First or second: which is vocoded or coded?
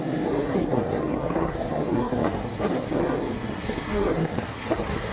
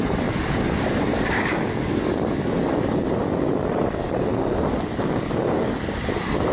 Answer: first